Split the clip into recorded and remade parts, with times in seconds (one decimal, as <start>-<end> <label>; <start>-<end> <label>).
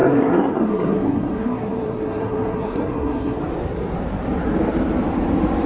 0.0-3.4 remade; 3.4-5.7 recorded